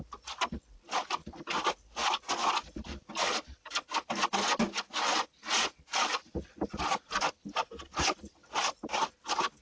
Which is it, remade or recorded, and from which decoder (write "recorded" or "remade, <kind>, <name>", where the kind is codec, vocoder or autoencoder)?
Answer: recorded